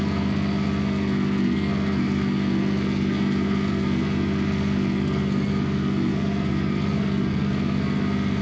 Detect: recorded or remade remade